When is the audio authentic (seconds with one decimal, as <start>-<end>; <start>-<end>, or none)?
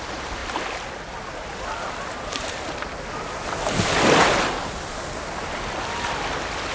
0.0-6.7